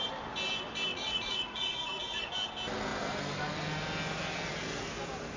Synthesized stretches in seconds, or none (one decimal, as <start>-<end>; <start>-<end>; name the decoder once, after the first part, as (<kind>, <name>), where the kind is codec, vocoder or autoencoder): 0.9-2.3 (vocoder, Vocos)